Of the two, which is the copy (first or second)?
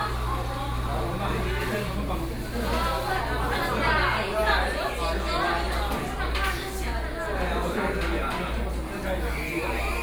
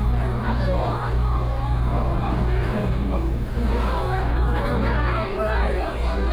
second